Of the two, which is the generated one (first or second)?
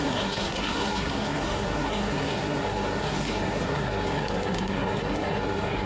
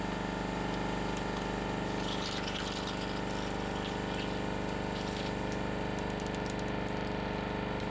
first